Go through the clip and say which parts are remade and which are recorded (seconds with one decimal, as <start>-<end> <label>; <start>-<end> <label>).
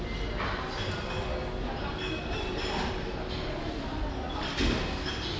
0.0-5.4 recorded